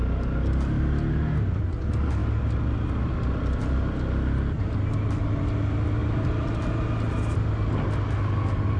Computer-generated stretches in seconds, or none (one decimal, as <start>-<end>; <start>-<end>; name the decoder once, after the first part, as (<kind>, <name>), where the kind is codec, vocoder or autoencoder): none